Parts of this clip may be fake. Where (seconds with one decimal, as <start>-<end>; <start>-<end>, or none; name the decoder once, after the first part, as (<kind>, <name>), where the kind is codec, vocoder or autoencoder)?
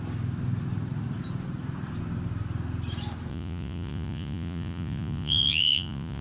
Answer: 3.3-6.2 (vocoder, Vocos)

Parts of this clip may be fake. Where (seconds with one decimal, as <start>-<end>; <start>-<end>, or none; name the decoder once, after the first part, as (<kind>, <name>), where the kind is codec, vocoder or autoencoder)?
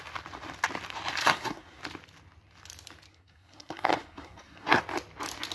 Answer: 1.2-1.8 (codec, SNAC); 3.1-4.8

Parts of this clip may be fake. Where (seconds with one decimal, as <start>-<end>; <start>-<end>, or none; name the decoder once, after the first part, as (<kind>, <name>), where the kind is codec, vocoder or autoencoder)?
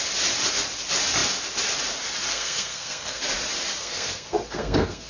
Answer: 2.3-3.2 (codec, SNAC); 3.8-5.1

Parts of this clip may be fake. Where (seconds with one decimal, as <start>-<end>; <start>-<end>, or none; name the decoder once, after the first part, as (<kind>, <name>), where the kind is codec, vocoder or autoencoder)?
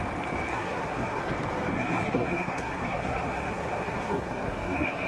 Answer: 0.5-1.2 (codec, SNAC); 1.7-5.1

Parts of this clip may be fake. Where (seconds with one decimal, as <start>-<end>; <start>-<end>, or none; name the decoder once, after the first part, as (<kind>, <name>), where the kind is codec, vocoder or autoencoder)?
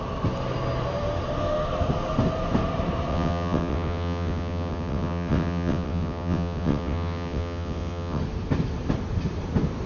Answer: 3.1-8.2 (vocoder, WaveNeXt)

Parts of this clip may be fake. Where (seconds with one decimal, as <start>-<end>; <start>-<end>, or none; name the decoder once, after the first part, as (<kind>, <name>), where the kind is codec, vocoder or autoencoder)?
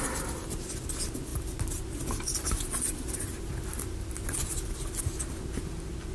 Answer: 1.3-5.0 (vocoder, BigVGAN v2)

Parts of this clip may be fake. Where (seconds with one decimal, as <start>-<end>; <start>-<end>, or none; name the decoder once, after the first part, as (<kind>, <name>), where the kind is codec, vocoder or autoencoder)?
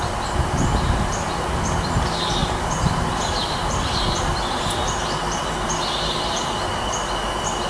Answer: 2.4-4.5 (vocoder, BigVGAN v2)